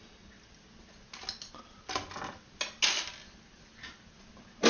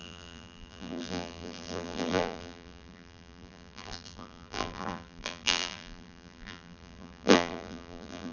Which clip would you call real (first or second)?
first